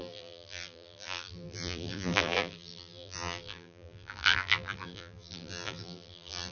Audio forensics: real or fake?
fake